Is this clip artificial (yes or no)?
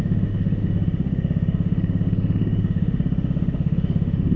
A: yes